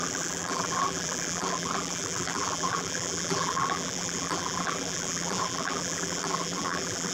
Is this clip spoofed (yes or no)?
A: yes